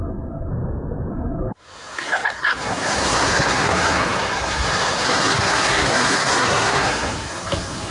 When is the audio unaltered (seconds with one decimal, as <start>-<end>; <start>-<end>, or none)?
0.5-1.1